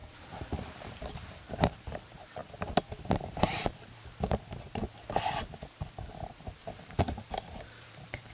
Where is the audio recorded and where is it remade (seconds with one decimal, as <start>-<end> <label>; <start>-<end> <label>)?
0.0-2.4 remade; 2.4-3.0 recorded; 3.0-4.8 remade; 4.8-6.1 recorded; 6.1-8.3 remade